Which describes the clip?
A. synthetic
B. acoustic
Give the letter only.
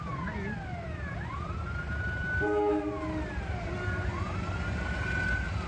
B